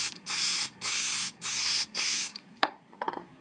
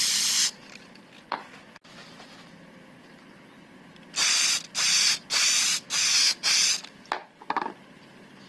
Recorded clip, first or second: second